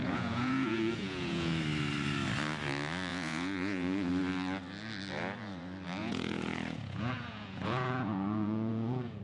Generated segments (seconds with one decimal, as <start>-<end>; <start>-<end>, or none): 0.0-1.6; 3.1-4.1; 6.0-9.2